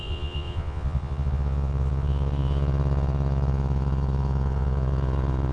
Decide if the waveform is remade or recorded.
remade